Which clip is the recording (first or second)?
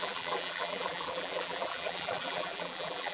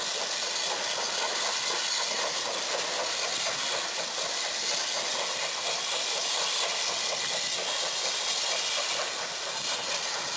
second